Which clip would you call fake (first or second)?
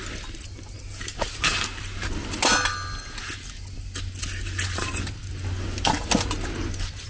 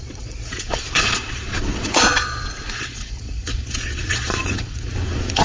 second